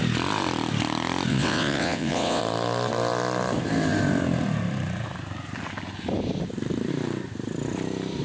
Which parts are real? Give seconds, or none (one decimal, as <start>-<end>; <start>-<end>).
0.0-1.3; 2.4-8.2